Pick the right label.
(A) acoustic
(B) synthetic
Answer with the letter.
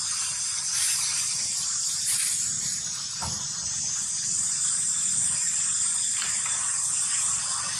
B